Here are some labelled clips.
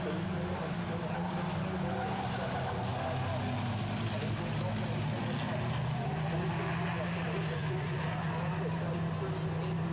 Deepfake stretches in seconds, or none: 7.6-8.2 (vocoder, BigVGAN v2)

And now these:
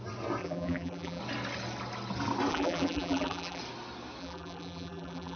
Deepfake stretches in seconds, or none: 0.4-1.2 (vocoder, BigVGAN v2); 2.5-3.6; 4.2-5.4

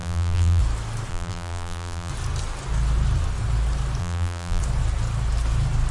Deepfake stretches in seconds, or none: 0.0-0.6 (vocoder, BigVGAN v2); 1.1-2.1; 4.0-4.6

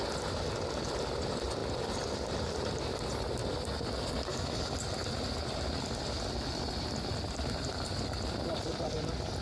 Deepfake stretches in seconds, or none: none

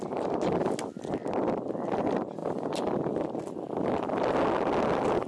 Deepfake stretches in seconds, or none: none

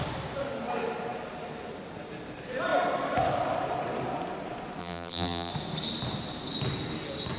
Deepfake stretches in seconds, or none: 4.8-5.5 (vocoder, BigVGAN v2)

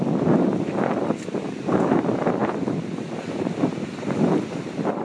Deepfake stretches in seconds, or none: 2.4-3.6 (vocoder, BigVGAN v2)